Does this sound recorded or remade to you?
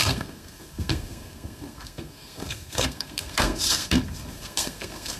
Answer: remade